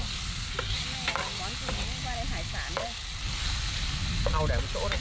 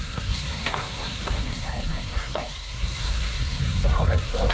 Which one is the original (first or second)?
first